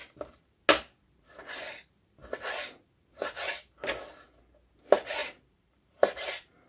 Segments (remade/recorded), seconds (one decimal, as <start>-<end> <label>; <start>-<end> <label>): 0.0-5.2 recorded; 5.2-6.7 remade